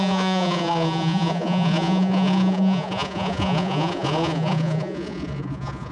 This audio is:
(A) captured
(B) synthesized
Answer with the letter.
B